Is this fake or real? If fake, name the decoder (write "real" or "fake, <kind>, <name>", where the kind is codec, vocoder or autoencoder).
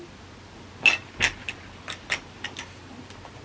real